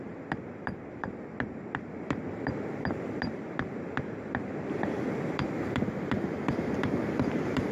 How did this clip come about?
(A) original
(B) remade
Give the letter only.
B